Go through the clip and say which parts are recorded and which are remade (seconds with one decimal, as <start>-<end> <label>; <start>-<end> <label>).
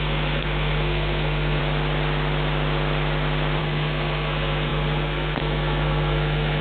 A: 0.0-1.6 remade; 1.6-3.6 recorded; 3.6-6.6 remade